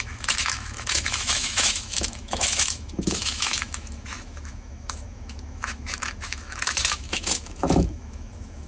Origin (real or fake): fake